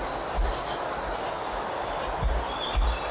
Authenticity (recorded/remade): recorded